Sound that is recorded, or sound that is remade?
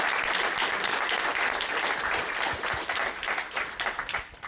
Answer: recorded